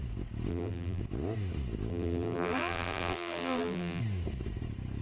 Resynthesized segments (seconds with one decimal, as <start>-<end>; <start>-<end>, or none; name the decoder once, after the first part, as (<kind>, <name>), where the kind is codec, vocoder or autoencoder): 0.5-1.0 (vocoder, BigVGAN v2); 1.9-4.0